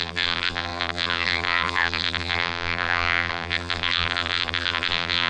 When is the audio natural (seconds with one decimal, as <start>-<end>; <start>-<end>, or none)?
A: none